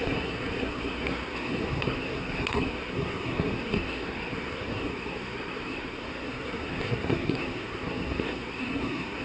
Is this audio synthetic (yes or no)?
yes